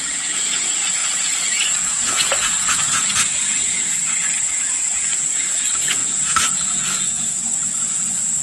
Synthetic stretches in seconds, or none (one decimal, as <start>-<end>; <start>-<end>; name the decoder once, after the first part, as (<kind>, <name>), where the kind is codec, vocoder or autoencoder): 0.0-8.4 (vocoder, Vocos)